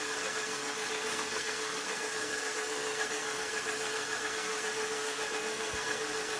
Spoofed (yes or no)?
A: yes